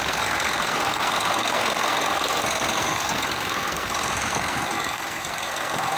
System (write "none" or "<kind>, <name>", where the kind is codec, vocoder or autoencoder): codec, SNAC